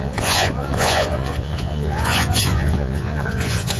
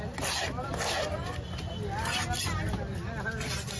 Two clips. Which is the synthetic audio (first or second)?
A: first